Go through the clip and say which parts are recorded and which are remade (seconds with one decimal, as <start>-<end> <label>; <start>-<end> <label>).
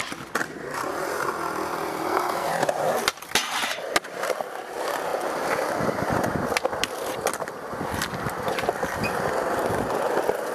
0.0-1.9 recorded; 1.9-2.5 remade; 2.5-10.5 recorded